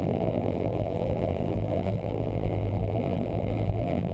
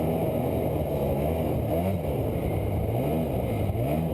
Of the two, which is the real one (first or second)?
second